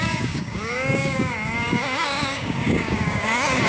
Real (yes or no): no